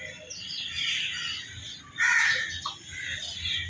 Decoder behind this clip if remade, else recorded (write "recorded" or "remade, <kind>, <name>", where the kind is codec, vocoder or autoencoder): recorded